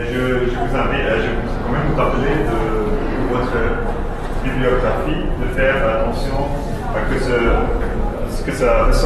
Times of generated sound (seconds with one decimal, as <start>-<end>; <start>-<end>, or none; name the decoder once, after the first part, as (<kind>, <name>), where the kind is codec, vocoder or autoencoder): 7.6-8.5 (vocoder, Vocos)